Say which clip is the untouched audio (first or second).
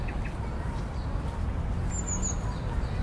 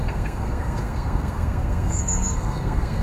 first